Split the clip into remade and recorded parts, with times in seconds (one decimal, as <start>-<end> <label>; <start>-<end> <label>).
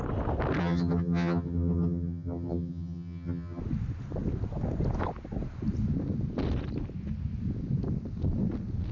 0.0-0.6 recorded; 0.6-3.6 remade; 3.6-8.9 recorded